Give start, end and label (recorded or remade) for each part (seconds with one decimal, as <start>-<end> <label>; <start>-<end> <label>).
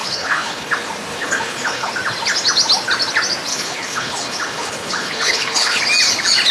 0.0-0.7 remade; 0.7-1.1 recorded; 1.1-1.9 remade; 1.9-3.5 recorded; 3.5-5.8 remade; 5.8-6.5 recorded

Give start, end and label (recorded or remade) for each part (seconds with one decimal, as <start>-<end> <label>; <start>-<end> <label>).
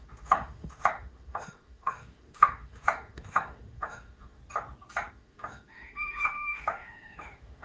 0.0-4.4 remade; 4.4-5.1 recorded; 5.1-7.6 remade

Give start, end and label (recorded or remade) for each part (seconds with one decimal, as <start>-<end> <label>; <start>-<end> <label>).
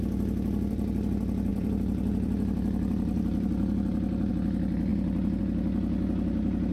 0.0-1.5 recorded; 1.5-4.3 remade; 4.3-6.7 recorded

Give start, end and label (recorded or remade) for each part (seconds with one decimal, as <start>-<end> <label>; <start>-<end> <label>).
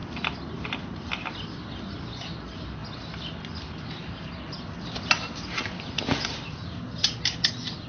0.0-1.6 remade; 1.6-7.9 recorded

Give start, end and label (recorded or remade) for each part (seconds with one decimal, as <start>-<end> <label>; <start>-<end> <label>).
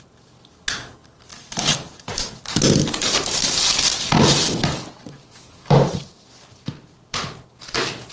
0.0-1.3 recorded; 1.3-2.3 remade; 2.3-8.1 recorded